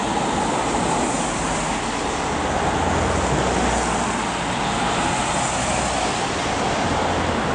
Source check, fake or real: real